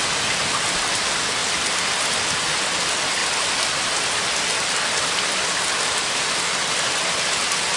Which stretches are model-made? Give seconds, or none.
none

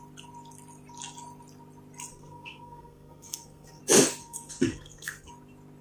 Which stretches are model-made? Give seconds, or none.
2.1-3.8 (codec, SNAC); 4.2-5.3

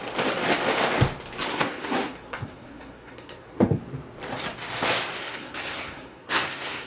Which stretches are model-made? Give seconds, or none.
1.5-3.8 (codec, SNAC); 5.2-6.9